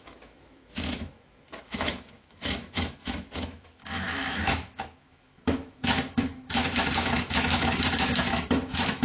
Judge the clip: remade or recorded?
remade